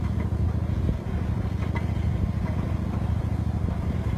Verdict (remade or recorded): recorded